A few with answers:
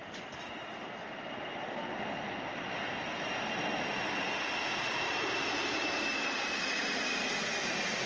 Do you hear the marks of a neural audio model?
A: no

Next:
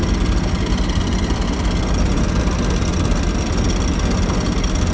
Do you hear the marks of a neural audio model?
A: no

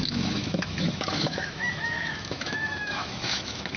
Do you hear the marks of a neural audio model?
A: yes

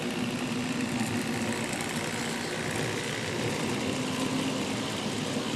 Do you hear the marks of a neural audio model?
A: no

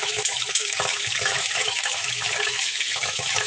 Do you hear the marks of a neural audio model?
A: yes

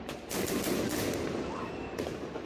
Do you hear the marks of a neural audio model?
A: no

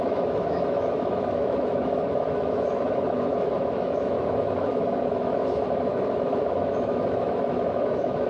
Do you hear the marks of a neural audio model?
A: yes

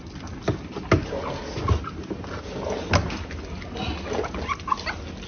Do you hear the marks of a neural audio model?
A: no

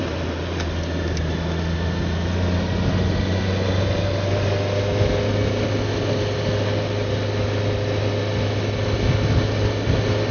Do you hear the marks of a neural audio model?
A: no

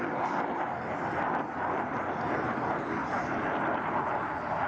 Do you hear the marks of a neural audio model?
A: no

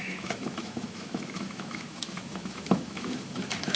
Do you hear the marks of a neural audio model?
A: yes